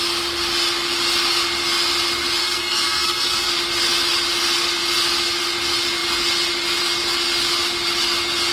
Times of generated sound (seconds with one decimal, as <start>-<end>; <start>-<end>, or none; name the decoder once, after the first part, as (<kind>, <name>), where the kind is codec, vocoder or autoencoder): 2.4-3.5 (codec, SNAC)